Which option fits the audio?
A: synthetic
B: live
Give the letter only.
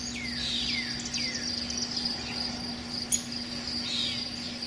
B